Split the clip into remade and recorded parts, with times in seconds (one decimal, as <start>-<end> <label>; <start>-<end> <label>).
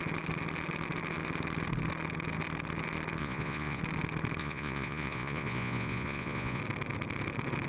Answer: 0.0-3.2 recorded; 3.2-3.8 remade; 3.8-4.4 recorded; 4.4-6.6 remade; 6.6-7.7 recorded